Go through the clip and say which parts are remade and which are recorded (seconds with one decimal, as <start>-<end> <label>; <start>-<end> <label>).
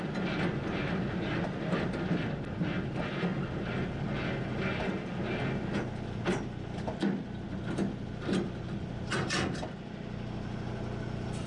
0.0-11.5 recorded